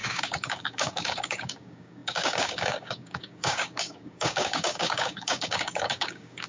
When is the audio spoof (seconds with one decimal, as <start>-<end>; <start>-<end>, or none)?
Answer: 0.0-6.5